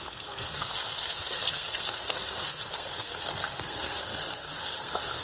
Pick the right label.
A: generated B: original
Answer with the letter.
A